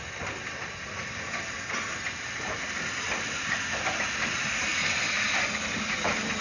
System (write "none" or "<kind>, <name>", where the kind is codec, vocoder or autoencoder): none